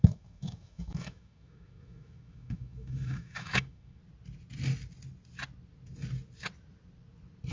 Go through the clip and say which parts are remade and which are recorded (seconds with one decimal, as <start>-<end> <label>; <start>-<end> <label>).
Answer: 0.0-4.0 remade; 4.0-7.5 recorded